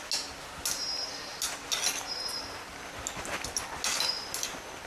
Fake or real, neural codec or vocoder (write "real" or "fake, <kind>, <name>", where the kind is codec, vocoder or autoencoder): real